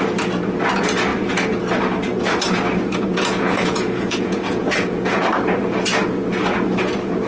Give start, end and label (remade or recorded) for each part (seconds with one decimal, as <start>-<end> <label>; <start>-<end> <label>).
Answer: 0.0-3.1 recorded; 3.1-5.2 remade; 5.2-7.3 recorded